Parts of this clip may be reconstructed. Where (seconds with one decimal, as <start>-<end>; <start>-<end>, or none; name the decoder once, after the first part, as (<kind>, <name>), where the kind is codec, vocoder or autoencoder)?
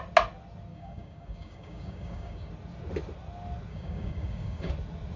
0.7-2.5 (codec, DAC); 3.7-4.7